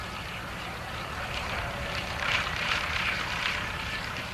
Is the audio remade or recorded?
remade